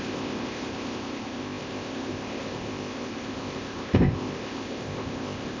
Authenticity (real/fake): fake